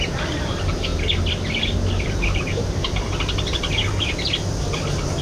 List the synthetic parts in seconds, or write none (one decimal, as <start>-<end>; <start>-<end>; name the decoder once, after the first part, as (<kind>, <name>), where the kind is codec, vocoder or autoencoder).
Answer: 0.0-0.9 (vocoder, BigVGAN v2); 2.0-2.8